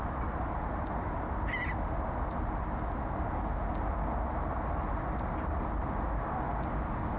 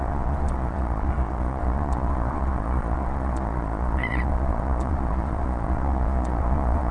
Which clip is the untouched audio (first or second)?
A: first